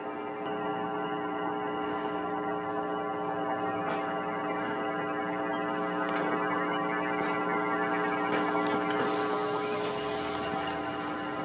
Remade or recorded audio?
recorded